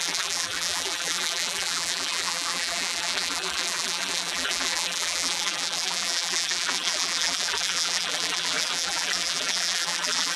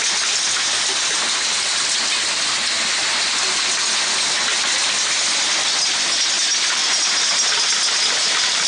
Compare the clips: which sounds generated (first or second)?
first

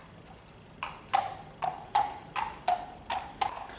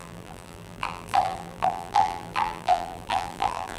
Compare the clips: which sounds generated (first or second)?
second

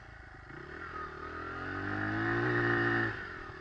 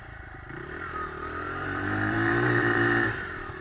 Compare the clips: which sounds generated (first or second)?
second